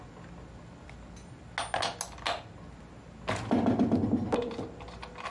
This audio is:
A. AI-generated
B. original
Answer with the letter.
B